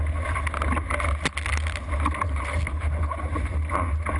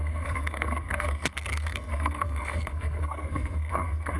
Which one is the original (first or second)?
first